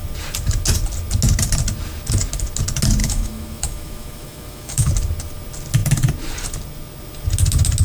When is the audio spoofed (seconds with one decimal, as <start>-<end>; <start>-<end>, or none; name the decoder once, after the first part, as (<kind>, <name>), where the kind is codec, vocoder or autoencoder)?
3.0-4.9 (autoencoder, DAC-VAE)

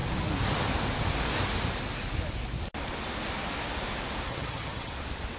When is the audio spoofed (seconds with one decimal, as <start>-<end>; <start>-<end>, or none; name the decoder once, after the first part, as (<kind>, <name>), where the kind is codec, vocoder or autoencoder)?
4.3-4.9 (vocoder, HiFi-GAN)

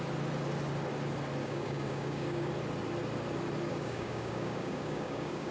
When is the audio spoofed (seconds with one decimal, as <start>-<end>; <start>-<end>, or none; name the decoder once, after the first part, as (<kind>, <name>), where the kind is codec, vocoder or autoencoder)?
1.4-2.5 (codec, DAC); 3.7-5.5

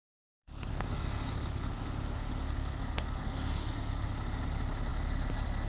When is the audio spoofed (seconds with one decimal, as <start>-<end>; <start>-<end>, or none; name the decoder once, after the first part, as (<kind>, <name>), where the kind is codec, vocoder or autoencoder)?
0.7-4.1 (codec, SNAC)

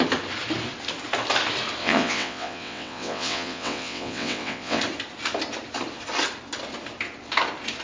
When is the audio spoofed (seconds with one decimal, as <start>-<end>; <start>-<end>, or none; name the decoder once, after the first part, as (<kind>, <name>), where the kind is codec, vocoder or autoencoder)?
1.8-4.8 (vocoder, WaveNeXt)